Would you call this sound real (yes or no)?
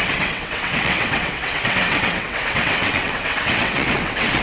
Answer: no